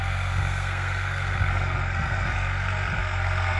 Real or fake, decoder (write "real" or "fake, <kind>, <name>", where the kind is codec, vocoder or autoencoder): fake, codec, SNAC